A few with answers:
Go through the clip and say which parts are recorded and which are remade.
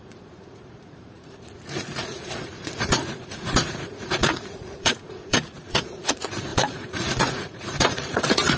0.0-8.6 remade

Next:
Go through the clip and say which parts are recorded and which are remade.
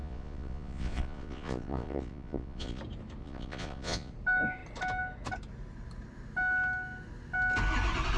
0.0-2.8 remade; 2.8-3.2 recorded; 3.2-4.1 remade; 4.1-8.2 recorded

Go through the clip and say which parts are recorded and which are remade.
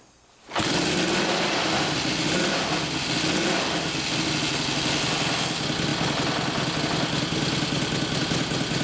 0.0-8.8 recorded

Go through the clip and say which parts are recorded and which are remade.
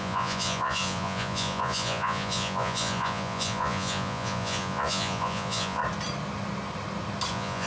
0.0-5.8 remade; 5.8-7.3 recorded; 7.3-7.7 remade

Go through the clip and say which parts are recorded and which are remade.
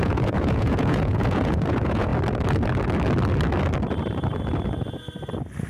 0.0-2.1 remade; 2.1-5.7 recorded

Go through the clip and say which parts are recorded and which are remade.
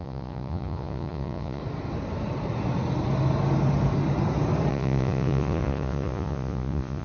0.0-1.6 remade; 1.6-4.7 recorded; 4.7-7.0 remade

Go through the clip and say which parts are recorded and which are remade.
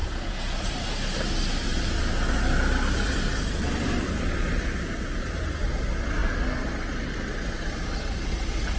0.0-0.7 remade; 0.7-8.8 recorded